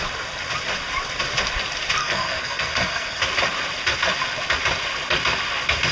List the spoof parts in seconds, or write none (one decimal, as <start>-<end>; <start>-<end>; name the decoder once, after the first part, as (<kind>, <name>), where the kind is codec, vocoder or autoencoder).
2.0-3.2 (codec, SNAC)